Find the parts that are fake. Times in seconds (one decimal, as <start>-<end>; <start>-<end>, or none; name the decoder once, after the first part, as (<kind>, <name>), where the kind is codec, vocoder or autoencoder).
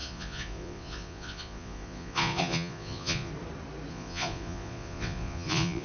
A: 0.0-3.3 (vocoder, Vocos); 3.9-5.8